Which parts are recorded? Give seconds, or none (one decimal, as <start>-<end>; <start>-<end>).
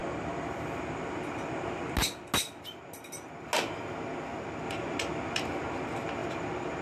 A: 0.0-6.8